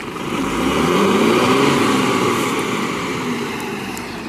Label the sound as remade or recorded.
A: remade